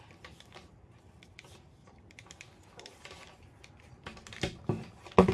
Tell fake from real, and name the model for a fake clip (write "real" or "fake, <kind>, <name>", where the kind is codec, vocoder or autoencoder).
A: real